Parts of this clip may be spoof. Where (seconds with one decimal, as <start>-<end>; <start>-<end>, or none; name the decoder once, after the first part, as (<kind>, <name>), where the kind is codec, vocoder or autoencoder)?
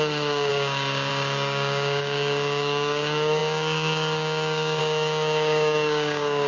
0.0-6.5 (codec, DAC)